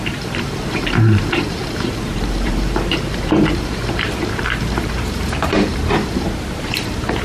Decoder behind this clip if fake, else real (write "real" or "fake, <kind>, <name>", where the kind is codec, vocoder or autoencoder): fake, vocoder, BigVGAN v2